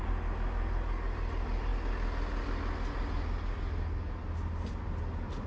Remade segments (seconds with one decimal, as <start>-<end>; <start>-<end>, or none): none